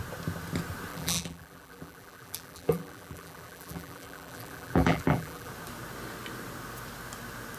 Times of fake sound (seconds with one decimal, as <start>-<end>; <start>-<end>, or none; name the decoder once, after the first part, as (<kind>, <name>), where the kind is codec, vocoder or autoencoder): 0.9-5.5 (vocoder, BigVGAN v2)